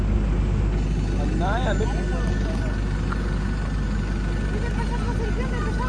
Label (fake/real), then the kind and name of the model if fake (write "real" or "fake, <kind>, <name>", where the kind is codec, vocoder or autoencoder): real